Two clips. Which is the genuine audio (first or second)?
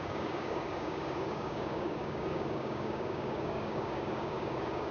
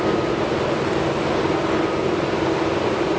second